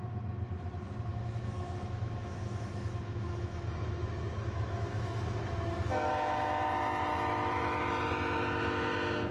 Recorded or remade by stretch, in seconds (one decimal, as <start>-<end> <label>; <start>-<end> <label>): 0.0-1.1 recorded; 1.1-6.1 remade; 6.1-7.1 recorded; 7.1-7.8 remade; 7.8-9.3 recorded